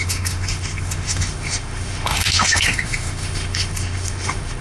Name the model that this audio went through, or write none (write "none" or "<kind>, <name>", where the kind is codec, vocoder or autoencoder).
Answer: autoencoder, DAC-VAE